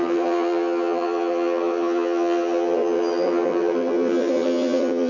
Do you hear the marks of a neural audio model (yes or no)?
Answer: yes